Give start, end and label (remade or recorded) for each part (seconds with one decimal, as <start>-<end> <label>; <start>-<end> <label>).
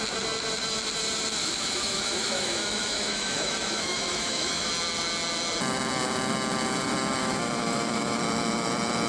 0.0-1.4 recorded; 1.4-4.7 remade; 4.7-7.2 recorded; 7.2-8.2 remade; 8.2-9.1 recorded